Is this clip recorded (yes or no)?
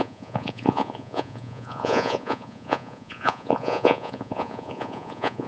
no